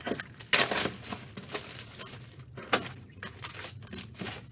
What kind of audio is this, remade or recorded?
recorded